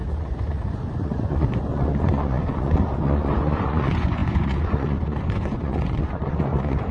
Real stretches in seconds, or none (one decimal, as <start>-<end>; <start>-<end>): none